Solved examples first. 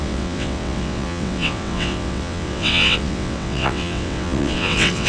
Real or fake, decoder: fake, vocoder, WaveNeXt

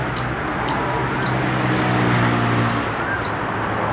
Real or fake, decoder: real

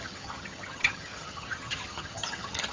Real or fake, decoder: fake, vocoder, HiFi-GAN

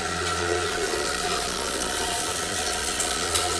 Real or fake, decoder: fake, vocoder, Vocos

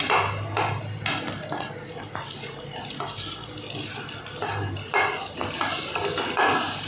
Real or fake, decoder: real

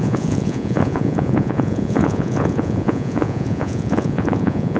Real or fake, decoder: fake, vocoder, Vocos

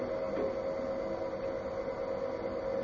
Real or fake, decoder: real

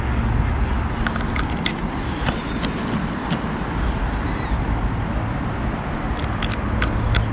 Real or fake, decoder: real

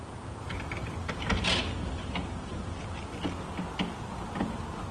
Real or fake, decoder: real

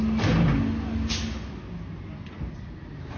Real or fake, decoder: real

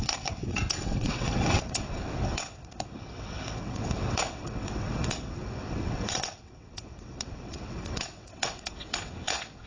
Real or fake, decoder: fake, vocoder, WaveNeXt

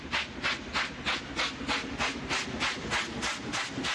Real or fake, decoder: real